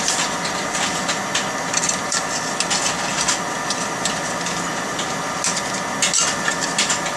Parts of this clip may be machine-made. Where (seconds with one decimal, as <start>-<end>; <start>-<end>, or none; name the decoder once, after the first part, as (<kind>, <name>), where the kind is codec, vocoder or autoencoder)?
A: none